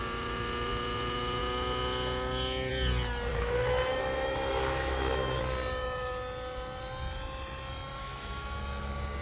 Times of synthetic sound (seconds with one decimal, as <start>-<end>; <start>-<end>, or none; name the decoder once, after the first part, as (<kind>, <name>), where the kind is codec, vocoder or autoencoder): 3.3-5.4 (autoencoder, DAC-VAE); 8.0-8.6